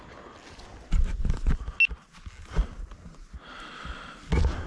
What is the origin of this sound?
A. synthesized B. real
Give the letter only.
B